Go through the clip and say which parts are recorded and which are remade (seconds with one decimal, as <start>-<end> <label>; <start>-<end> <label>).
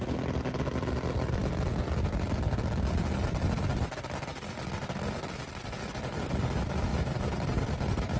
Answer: 0.0-6.9 recorded; 6.9-8.2 remade